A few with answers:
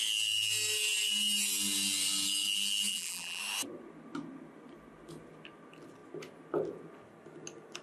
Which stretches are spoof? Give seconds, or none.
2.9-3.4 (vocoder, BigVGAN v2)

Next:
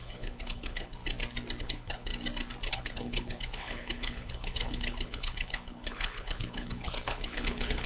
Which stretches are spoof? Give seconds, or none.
0.0-1.0 (codec, HILCodec); 1.6-2.1; 2.7-7.9

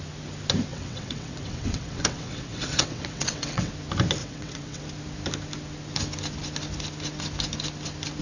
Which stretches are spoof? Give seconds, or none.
0.7-3.7 (vocoder, WaveNeXt); 4.2-4.8

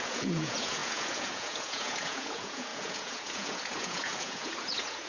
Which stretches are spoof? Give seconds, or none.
0.0-5.1 (vocoder, Vocos)

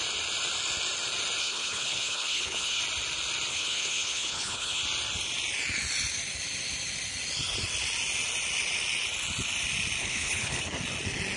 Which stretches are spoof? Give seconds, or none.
1.4-2.8 (codec, HILCodec); 3.5-4.8; 10.0-10.6

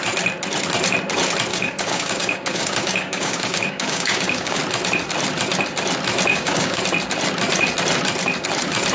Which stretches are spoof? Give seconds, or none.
1.5-4.6 (codec, DAC); 6.3-6.8